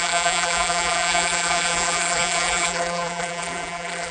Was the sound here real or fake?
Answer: fake